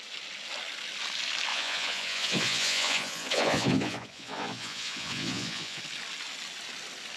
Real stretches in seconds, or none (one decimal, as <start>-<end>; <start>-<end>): 0.0-1.5; 5.8-7.2